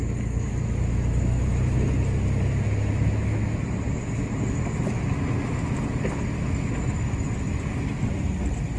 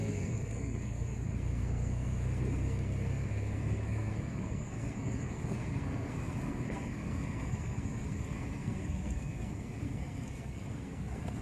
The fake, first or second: second